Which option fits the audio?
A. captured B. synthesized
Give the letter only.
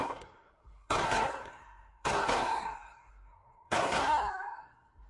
B